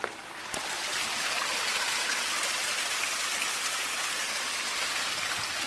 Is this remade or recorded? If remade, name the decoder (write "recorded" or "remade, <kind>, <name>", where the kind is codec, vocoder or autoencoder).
recorded